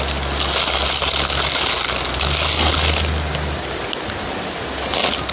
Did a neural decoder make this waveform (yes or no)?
no